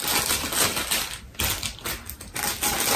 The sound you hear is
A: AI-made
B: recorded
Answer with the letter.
B